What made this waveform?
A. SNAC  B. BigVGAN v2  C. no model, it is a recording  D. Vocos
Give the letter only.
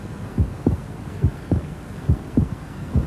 A